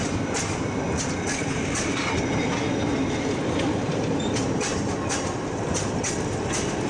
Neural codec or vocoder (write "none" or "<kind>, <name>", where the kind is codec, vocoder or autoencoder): none